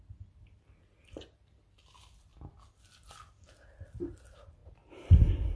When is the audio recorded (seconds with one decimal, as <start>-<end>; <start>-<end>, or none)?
0.0-5.6